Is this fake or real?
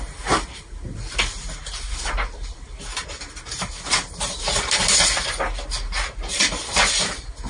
real